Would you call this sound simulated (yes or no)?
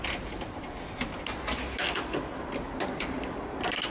no